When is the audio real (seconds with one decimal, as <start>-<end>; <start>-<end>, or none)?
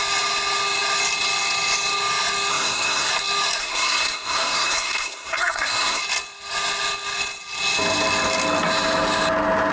0.0-2.5; 3.1-3.6; 6.0-9.7